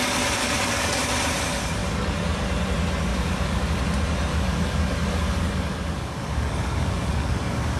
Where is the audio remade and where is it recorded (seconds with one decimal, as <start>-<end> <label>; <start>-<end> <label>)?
0.0-0.4 recorded; 0.4-1.0 remade; 1.0-3.1 recorded; 3.1-3.8 remade; 3.8-4.3 recorded; 4.3-7.8 remade